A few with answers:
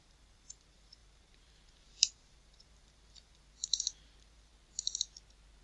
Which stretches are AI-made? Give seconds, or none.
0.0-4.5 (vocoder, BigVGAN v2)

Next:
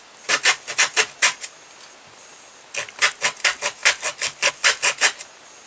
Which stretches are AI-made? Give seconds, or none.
none

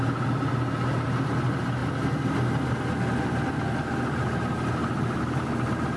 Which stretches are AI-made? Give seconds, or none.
none

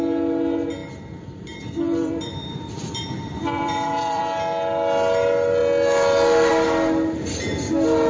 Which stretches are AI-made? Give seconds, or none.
0.8-4.2 (vocoder, BigVGAN v2)

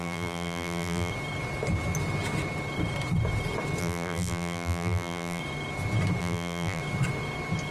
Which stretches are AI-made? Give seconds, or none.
0.0-1.1 (vocoder, BigVGAN v2); 3.8-5.4; 6.2-6.8

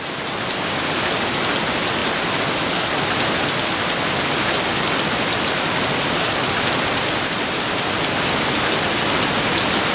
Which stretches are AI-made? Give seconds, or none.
none

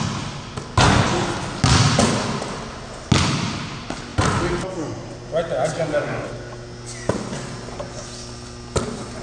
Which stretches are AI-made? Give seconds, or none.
none